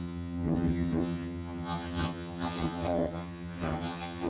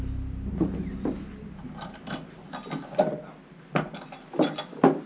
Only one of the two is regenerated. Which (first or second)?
first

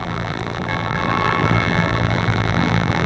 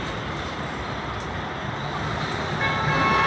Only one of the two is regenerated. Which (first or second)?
first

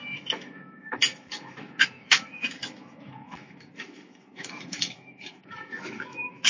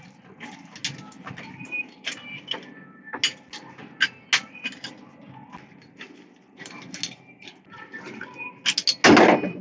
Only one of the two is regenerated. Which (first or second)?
first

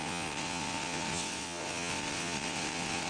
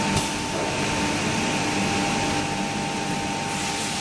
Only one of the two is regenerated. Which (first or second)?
first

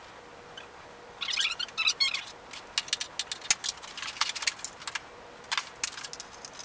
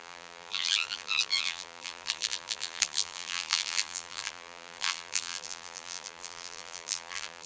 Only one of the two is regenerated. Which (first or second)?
second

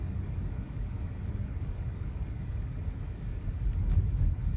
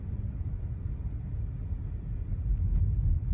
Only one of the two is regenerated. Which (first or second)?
first